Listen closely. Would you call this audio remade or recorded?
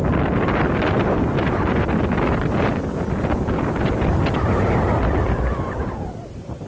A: recorded